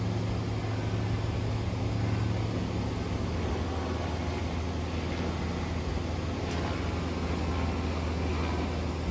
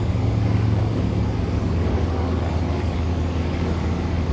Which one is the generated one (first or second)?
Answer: second